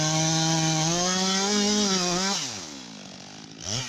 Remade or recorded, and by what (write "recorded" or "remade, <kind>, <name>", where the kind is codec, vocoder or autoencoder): recorded